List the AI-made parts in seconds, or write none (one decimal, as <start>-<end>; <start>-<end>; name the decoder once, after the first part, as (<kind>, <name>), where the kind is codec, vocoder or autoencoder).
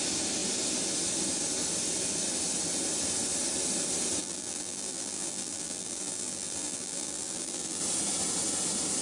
4.2-7.8 (vocoder, BigVGAN v2)